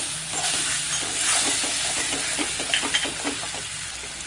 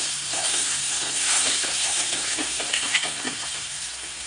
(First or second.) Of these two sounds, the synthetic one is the second